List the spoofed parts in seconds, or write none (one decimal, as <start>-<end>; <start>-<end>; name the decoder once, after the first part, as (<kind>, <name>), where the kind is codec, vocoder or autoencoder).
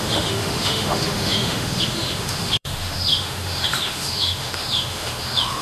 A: 0.0-5.6 (autoencoder, DAC-VAE)